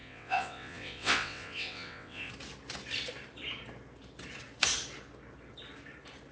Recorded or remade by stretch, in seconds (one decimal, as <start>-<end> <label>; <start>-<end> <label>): 0.0-2.3 remade; 2.3-6.3 recorded